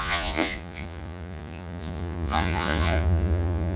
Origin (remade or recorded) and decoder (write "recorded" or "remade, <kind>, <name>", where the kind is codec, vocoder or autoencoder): remade, vocoder, Vocos